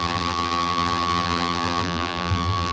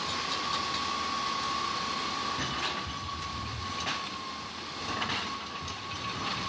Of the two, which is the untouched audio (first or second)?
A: second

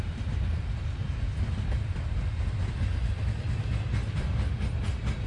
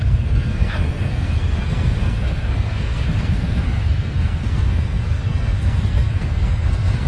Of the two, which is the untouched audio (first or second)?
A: first